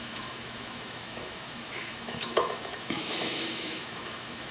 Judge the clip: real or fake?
fake